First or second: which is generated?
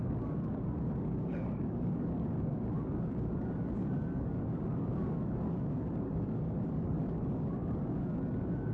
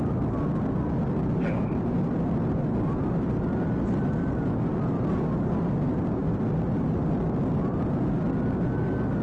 first